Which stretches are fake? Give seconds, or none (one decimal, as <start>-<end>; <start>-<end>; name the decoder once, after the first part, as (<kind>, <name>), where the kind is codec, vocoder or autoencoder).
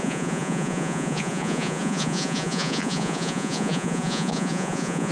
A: 0.0-5.1 (vocoder, Vocos)